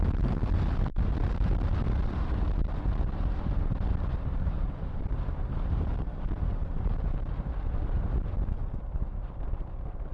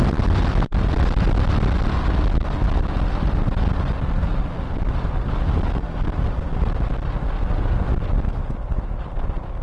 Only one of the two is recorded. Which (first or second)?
second